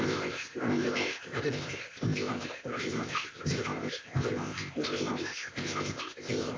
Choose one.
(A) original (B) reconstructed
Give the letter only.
B